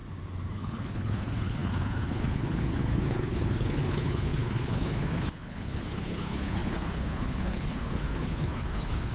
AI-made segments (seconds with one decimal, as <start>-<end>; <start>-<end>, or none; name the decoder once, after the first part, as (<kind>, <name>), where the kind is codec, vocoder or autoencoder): 0.5-9.1 (codec, HILCodec)